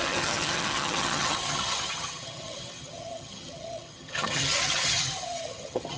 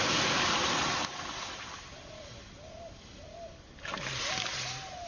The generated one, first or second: first